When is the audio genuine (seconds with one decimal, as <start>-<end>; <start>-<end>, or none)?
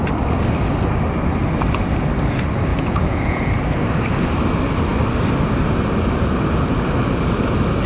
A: 0.0-2.7; 3.5-7.9